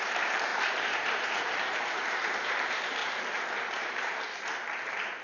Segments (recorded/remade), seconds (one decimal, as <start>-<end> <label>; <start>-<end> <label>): 0.0-3.0 remade; 3.0-3.5 recorded; 3.5-5.2 remade